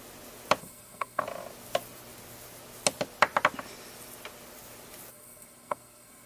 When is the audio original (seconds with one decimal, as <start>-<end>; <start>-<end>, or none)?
0.0-0.6; 1.2-5.1

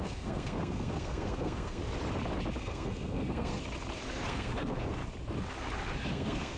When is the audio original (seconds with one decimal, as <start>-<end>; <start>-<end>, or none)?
1.8-2.6; 3.6-4.3; 5.0-6.1

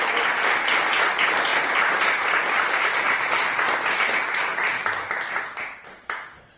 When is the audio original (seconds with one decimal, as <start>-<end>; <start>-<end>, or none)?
0.0-1.5; 3.3-4.5; 5.4-6.6

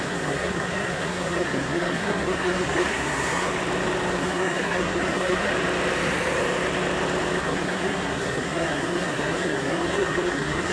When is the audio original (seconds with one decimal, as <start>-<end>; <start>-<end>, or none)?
3.5-4.1; 5.5-7.4

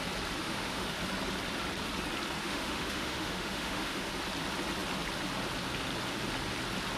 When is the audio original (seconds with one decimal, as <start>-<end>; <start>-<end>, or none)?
0.0-0.4; 1.0-2.4; 4.1-7.0